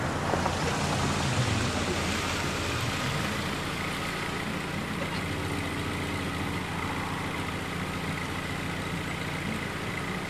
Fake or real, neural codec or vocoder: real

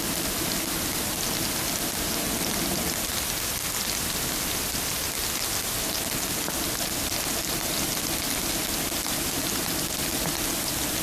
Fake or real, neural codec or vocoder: real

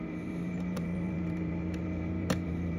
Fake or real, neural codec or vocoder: fake, vocoder, BigVGAN v2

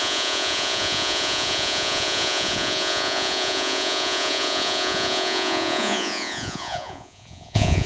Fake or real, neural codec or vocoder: fake, vocoder, Vocos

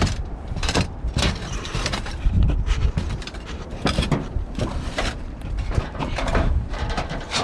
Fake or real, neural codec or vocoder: fake, vocoder, BigVGAN v2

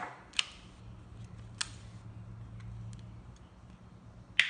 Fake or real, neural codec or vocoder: real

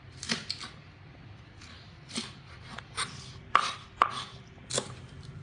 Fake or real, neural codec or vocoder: fake, vocoder, BigVGAN v2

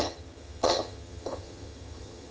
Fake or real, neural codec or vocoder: fake, vocoder, HiFi-GAN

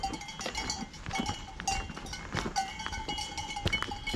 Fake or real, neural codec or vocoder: real